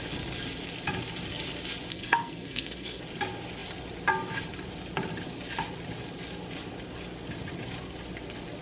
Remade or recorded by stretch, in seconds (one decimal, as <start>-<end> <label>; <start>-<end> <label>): 0.0-1.9 recorded; 1.9-3.0 remade; 3.0-8.6 recorded